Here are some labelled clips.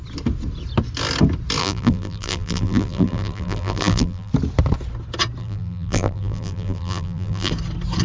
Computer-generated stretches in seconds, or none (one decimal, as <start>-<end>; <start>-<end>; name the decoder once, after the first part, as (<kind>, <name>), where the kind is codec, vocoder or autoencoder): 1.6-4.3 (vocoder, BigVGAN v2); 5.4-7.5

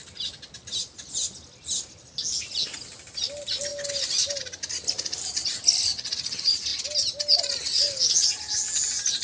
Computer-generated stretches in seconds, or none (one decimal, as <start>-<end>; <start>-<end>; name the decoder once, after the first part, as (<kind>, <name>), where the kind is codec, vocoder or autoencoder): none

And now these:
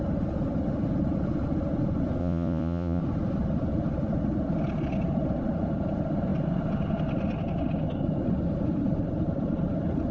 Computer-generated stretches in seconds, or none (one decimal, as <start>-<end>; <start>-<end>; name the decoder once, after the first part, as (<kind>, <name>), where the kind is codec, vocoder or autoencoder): 2.2-3.0 (vocoder, Vocos)

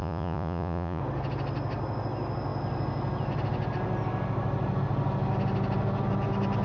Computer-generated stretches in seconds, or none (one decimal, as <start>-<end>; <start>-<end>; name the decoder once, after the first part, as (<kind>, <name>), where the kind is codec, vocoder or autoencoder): 0.0-1.0 (vocoder, Vocos)

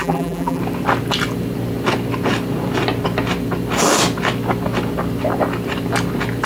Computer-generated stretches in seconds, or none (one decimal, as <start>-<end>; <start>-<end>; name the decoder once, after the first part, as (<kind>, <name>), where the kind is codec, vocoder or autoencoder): 0.0-0.6 (vocoder, BigVGAN v2)

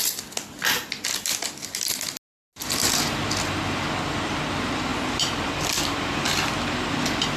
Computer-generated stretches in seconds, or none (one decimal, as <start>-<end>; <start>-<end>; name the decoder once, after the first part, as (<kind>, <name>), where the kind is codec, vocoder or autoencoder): 4.9-6.3 (vocoder, BigVGAN v2)